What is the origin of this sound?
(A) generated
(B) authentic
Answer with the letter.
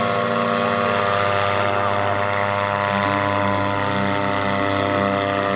B